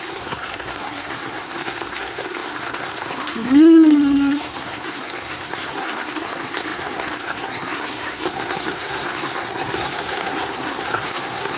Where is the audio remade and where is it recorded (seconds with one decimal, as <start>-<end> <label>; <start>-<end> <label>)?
0.0-11.6 remade